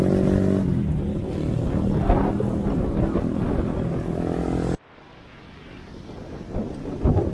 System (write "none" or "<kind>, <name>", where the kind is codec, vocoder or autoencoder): none